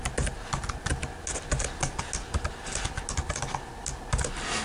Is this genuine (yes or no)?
yes